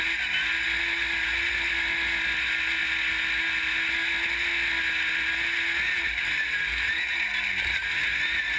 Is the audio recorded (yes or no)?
yes